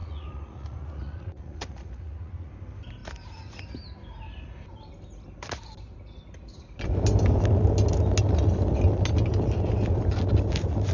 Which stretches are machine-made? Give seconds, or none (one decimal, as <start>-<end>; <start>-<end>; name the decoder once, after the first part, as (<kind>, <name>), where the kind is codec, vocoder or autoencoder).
0.0-2.5 (vocoder, Vocos)